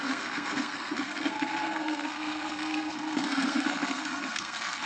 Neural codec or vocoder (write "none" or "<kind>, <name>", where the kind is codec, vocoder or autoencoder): codec, SNAC